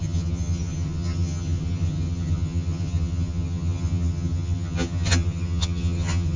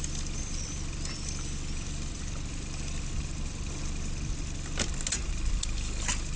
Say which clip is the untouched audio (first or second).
second